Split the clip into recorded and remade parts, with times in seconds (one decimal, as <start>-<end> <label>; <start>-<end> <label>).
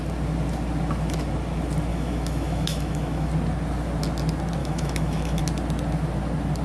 0.0-1.9 recorded; 1.9-3.3 remade; 3.3-4.6 recorded; 4.6-5.4 remade; 5.4-6.6 recorded